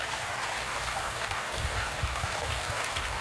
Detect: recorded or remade remade